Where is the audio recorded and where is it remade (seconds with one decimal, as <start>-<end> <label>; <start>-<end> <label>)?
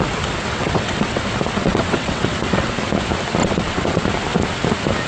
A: 0.0-0.5 recorded; 0.5-1.2 remade; 1.2-1.6 recorded; 1.6-2.7 remade; 2.7-3.4 recorded; 3.4-4.0 remade; 4.0-5.1 recorded